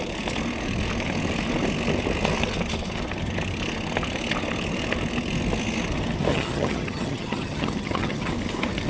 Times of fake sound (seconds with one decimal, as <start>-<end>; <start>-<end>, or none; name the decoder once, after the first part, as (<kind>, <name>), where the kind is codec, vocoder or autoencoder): 6.3-8.3 (vocoder, HiFi-GAN)